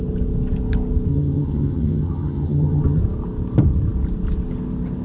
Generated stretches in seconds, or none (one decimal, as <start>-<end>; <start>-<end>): 1.1-3.0